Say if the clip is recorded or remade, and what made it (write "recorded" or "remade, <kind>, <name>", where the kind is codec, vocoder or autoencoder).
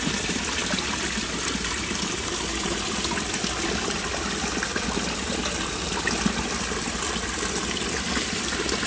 recorded